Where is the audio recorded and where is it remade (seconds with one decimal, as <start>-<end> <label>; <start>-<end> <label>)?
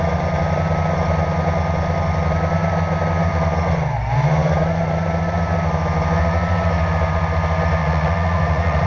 0.0-7.8 recorded; 7.8-8.9 remade